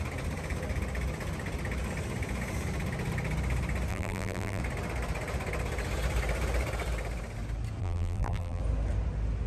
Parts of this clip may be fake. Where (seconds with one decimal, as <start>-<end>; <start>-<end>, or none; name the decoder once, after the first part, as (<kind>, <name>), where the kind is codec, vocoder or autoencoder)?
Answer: 3.9-4.6 (vocoder, BigVGAN v2); 7.8-8.6